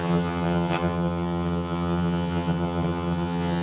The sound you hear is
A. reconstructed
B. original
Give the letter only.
A